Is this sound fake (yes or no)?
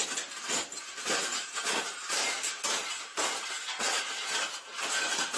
no